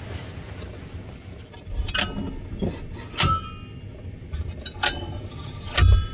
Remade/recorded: recorded